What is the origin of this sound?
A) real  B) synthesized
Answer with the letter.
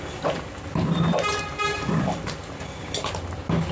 A